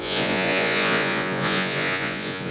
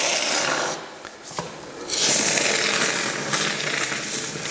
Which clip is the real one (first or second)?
second